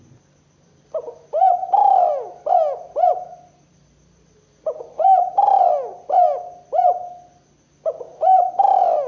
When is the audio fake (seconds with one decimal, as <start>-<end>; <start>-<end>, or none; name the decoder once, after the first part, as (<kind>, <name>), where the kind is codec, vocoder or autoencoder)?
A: none